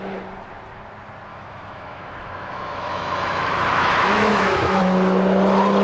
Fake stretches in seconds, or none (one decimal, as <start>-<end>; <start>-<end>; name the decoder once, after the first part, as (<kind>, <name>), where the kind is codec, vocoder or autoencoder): 1.3-4.8 (autoencoder, DAC-VAE)